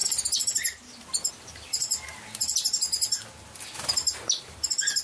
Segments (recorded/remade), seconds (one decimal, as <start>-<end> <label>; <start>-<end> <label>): 0.0-5.0 recorded